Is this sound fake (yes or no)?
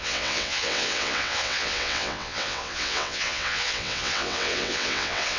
yes